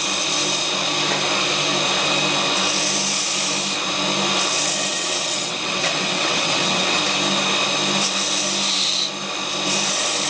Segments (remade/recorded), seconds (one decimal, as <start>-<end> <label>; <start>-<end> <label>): 0.0-4.9 recorded; 4.9-7.0 remade; 7.0-10.3 recorded